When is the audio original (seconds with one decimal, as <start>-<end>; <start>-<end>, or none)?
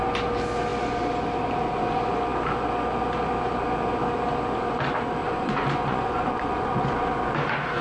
0.0-5.2; 6.9-7.8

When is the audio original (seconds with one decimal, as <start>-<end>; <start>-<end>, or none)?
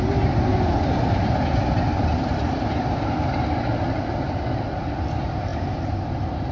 0.0-6.5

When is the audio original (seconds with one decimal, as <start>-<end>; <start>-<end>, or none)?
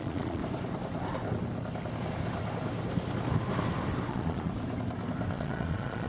0.4-4.1; 4.5-5.3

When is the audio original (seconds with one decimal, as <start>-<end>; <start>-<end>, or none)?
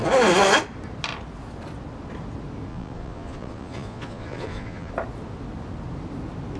0.0-2.7; 4.9-6.6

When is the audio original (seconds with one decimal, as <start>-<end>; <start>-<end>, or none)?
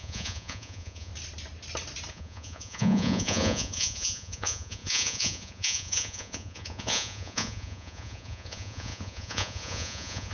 1.1-2.1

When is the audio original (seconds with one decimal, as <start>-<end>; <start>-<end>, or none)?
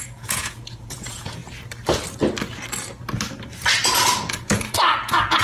1.4-4.2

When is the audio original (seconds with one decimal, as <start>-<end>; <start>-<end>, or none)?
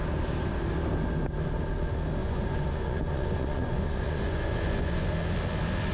0.0-2.2; 5.1-5.9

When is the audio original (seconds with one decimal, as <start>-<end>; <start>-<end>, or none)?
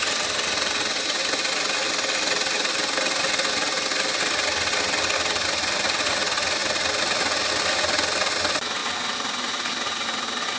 0.0-10.6